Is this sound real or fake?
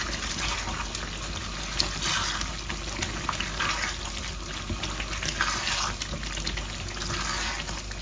real